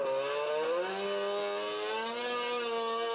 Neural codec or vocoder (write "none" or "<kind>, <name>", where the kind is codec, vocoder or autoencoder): none